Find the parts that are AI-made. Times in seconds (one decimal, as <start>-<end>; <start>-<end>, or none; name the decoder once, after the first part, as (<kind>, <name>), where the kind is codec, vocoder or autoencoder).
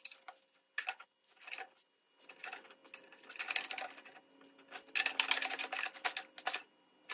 none